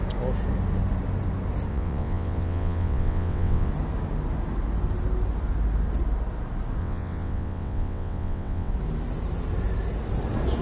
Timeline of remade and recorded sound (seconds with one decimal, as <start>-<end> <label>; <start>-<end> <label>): 0.0-1.7 recorded; 1.7-3.7 remade; 3.7-6.8 recorded; 6.8-8.7 remade; 8.7-10.6 recorded